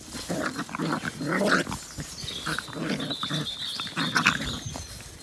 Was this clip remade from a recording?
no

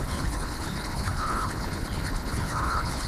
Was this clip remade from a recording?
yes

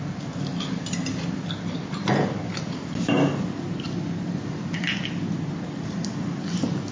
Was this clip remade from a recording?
no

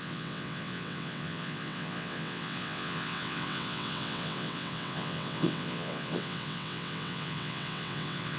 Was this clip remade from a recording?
yes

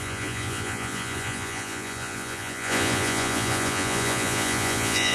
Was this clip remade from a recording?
yes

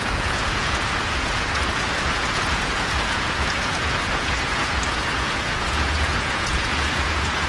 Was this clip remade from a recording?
yes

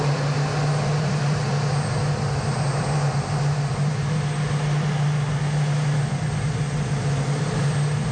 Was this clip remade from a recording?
no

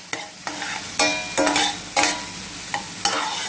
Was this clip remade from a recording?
no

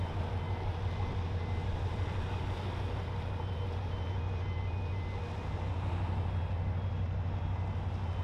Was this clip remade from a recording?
no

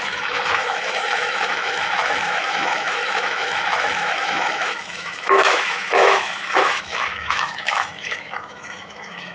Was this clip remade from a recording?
yes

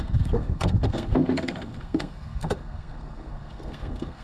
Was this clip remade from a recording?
yes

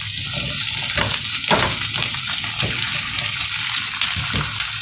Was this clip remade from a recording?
no